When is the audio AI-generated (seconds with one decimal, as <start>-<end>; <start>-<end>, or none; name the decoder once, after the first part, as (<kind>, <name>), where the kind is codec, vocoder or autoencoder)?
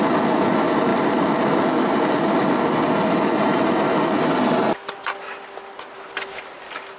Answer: 0.9-2.5 (vocoder, BigVGAN v2)